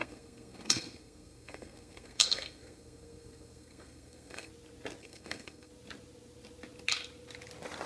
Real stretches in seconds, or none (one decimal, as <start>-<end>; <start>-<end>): 4.5-5.0; 5.7-7.9